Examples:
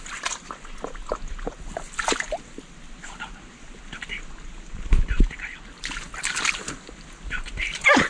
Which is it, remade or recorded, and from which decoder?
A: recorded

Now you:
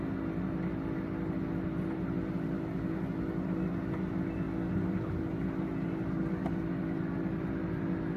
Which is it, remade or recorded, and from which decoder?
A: recorded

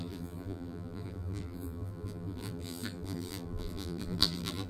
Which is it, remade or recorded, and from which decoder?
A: remade, vocoder, BigVGAN v2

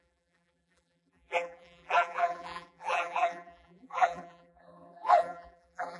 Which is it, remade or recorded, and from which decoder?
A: remade, vocoder, BigVGAN v2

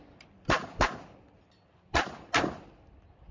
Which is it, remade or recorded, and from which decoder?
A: recorded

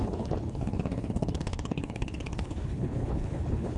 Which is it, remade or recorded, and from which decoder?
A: remade, codec, HILCodec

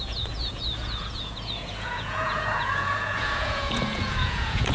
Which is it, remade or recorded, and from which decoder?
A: remade, vocoder, Vocos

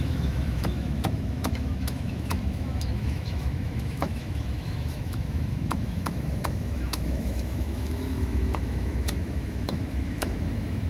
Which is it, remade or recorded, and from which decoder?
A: remade, autoencoder, DAC-VAE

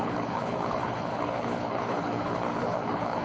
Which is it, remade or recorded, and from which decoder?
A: remade, codec, HILCodec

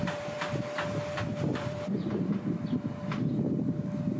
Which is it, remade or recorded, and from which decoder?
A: remade, vocoder, BigVGAN v2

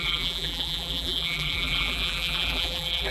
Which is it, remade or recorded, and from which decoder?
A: remade, vocoder, BigVGAN v2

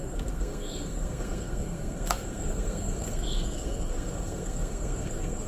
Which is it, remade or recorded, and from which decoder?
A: remade, codec, SNAC